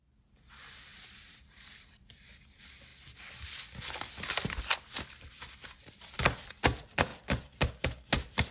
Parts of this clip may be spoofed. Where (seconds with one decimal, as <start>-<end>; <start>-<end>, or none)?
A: 0.9-2.3